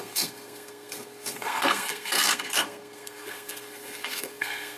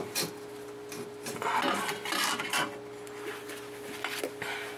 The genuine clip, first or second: second